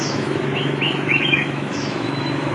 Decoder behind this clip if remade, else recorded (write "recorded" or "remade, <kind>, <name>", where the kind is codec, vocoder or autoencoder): remade, autoencoder, DAC-VAE